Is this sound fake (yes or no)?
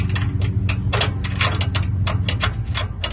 no